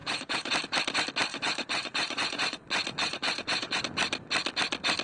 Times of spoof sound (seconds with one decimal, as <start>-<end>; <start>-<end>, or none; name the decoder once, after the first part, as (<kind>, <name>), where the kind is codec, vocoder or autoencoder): 0.0-0.5 (vocoder, Vocos); 1.3-3.8